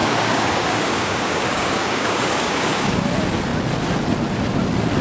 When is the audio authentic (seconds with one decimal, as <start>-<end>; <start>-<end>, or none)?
3.0-5.0